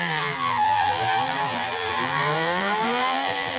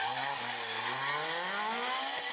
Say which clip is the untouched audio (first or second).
second